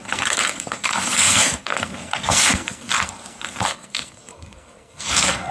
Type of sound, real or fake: fake